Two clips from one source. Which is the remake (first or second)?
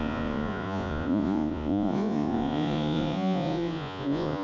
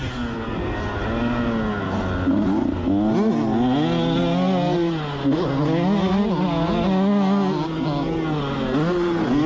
first